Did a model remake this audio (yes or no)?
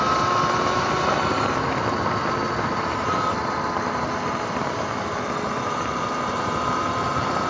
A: no